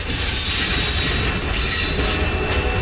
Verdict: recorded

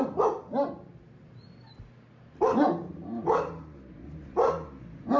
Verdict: recorded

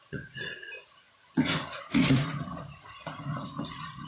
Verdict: remade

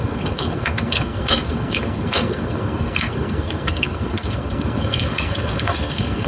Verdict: remade